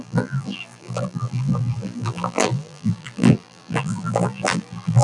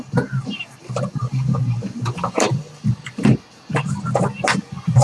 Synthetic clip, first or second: first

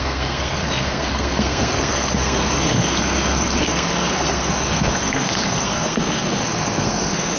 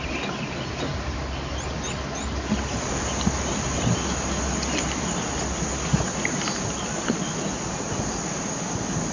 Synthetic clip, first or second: first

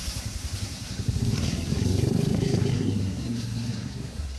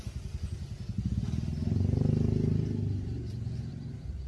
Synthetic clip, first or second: first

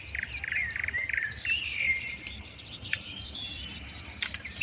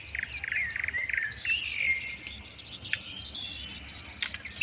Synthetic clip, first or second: first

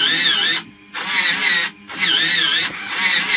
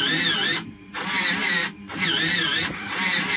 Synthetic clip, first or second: second